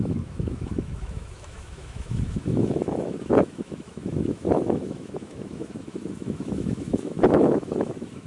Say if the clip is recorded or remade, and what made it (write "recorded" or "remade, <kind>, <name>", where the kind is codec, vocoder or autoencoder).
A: remade, autoencoder, DAC-VAE